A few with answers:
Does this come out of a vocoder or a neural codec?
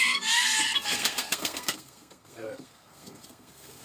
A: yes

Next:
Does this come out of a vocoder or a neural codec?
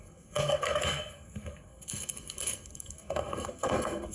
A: yes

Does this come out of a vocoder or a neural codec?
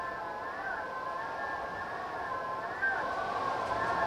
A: no